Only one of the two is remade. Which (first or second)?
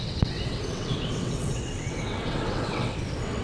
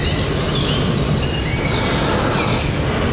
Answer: first